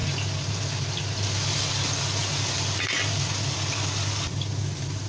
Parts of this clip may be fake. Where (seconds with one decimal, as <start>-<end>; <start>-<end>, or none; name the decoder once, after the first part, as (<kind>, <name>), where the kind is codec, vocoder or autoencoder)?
none

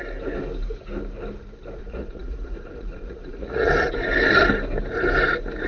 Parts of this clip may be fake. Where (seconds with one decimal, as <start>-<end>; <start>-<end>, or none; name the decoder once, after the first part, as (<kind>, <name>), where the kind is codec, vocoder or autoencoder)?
1.8-3.7 (vocoder, Vocos)

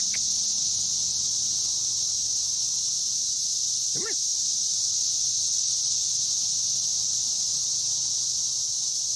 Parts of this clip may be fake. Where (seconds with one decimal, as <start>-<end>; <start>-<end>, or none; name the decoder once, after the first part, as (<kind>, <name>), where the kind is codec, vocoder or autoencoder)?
4.3-6.1 (vocoder, BigVGAN v2); 6.9-7.5

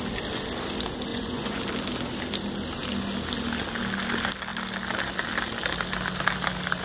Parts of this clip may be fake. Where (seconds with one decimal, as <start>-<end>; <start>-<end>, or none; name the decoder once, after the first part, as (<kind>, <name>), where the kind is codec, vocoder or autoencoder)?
1.1-1.6 (vocoder, Vocos)

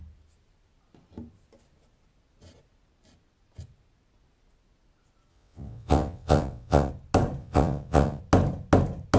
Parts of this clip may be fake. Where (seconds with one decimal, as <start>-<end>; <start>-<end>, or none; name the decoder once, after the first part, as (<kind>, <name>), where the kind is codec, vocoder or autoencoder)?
5.3-6.9 (vocoder, WaveNeXt); 7.4-8.2

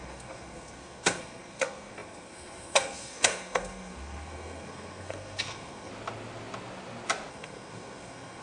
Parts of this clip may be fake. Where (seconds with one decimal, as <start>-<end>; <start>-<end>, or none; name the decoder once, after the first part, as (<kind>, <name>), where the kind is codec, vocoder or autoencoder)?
0.0-5.9 (codec, SNAC); 7.3-8.4